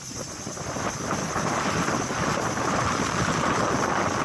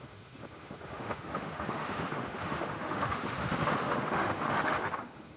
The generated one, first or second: second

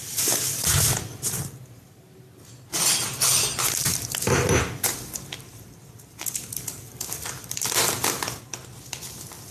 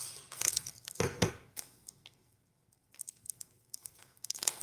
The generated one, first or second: second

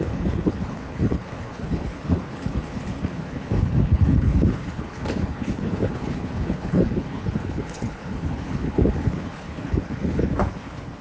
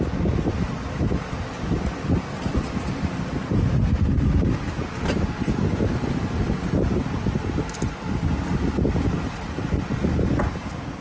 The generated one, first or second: first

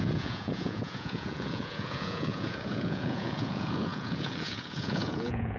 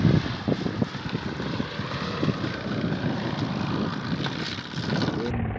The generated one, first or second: first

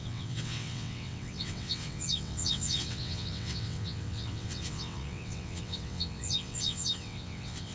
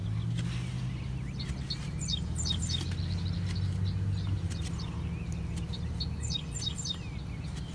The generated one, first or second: first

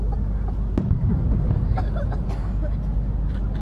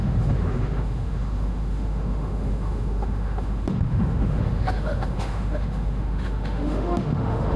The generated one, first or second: second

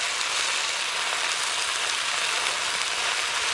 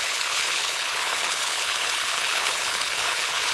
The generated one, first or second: second